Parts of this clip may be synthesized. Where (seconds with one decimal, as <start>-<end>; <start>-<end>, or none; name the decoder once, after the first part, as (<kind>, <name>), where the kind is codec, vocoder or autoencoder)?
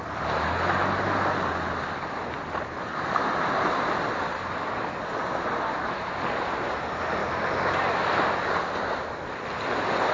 none